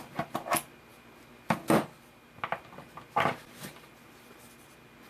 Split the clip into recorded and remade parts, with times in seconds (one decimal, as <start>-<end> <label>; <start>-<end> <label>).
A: 0.0-5.1 recorded

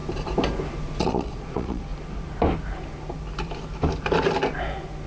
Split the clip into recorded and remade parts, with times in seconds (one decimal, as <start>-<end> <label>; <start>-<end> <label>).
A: 0.0-1.0 recorded; 1.0-1.9 remade; 1.9-5.1 recorded

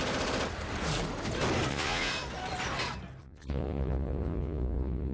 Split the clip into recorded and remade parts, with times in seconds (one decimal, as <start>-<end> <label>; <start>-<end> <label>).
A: 0.0-1.7 recorded; 1.7-2.1 remade; 2.1-3.2 recorded; 3.2-5.1 remade

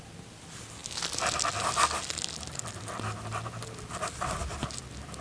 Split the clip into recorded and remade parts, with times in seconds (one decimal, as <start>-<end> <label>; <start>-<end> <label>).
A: 0.0-5.2 recorded